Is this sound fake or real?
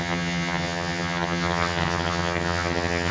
fake